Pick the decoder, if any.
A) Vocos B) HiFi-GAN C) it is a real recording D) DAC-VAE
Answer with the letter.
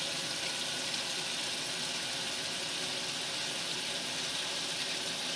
C